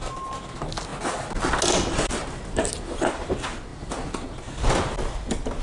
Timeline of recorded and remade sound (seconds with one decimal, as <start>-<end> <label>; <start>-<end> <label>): 0.0-5.6 recorded